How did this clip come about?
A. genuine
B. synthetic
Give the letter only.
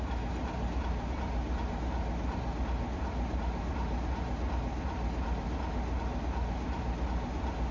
A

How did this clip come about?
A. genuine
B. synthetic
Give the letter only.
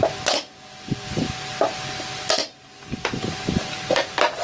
A